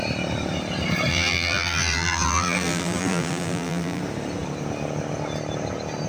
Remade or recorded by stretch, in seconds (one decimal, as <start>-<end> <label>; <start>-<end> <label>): 0.0-1.1 recorded; 1.1-4.0 remade; 4.0-6.1 recorded